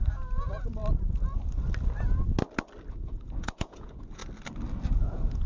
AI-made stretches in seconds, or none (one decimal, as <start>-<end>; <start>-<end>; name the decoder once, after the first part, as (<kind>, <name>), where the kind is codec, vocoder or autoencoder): 0.0-0.8 (vocoder, Vocos); 2.9-4.2; 4.9-5.5